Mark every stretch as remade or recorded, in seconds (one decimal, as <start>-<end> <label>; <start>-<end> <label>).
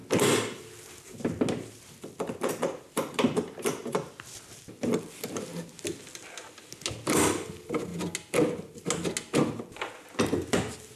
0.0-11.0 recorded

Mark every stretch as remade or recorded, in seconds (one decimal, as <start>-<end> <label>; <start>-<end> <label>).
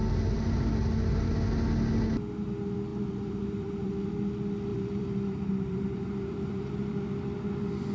0.0-2.9 recorded; 2.9-4.1 remade; 4.1-4.7 recorded; 4.7-6.7 remade; 6.7-7.9 recorded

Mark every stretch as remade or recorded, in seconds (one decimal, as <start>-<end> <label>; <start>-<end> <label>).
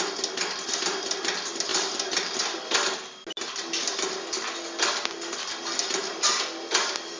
0.0-1.7 recorded; 1.7-2.4 remade; 2.4-6.0 recorded; 6.0-7.2 remade